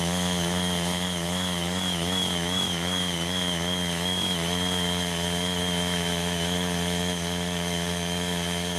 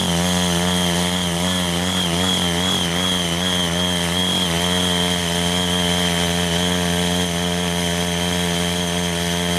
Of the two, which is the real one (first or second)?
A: second